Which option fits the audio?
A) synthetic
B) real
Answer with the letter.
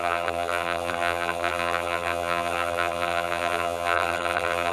A